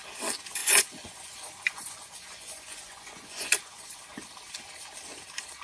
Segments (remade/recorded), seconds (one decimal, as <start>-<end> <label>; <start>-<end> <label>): 0.0-0.6 recorded; 0.6-4.0 remade; 4.0-5.6 recorded